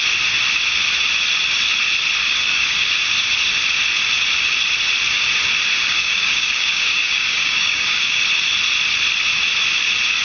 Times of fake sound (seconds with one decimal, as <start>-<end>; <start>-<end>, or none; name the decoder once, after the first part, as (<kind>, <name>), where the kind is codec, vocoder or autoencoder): 2.2-3.0 (codec, DAC); 5.8-8.2